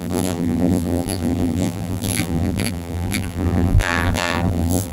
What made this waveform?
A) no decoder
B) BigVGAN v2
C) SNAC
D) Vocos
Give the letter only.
B